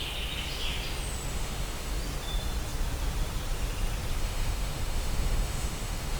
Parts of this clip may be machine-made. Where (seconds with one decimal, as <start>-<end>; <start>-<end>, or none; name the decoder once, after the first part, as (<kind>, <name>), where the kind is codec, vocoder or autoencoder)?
1.3-2.0 (autoencoder, DAC-VAE); 4.2-6.2